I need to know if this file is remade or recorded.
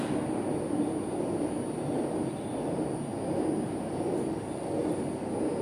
recorded